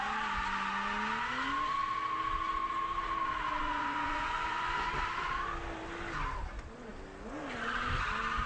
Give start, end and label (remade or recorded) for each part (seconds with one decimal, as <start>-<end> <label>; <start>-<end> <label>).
0.0-3.6 recorded; 3.6-4.9 remade; 4.9-8.5 recorded